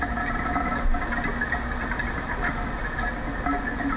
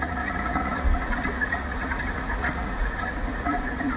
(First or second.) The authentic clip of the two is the first